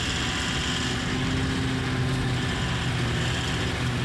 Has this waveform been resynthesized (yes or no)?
no